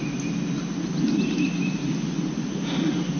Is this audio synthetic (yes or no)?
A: no